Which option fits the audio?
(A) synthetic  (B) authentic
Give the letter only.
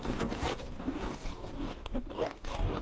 A